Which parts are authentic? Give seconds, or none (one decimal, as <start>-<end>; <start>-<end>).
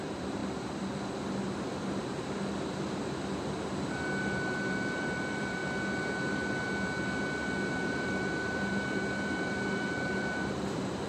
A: 0.4-4.2; 5.6-7.7